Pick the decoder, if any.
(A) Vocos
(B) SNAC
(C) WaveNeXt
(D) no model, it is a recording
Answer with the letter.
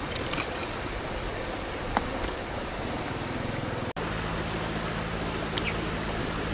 D